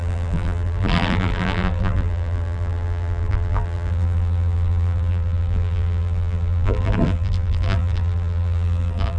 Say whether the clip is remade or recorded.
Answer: remade